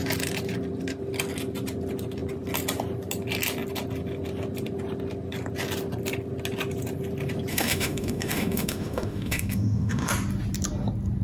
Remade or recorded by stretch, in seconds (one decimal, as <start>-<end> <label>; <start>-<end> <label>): 0.0-7.5 recorded; 7.5-10.1 remade; 10.1-11.2 recorded